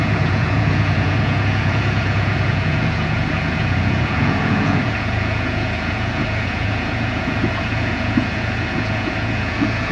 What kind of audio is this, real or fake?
fake